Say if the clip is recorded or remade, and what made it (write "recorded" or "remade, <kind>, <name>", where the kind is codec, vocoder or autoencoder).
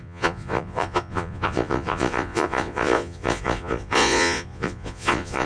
remade, vocoder, Vocos